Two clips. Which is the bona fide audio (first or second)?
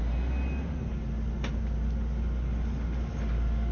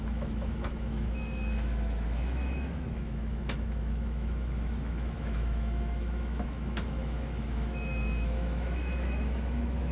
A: first